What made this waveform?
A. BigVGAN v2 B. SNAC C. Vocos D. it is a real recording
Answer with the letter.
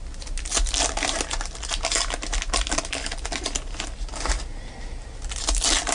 D